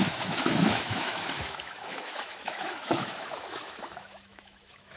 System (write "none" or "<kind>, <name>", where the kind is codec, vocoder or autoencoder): autoencoder, DAC-VAE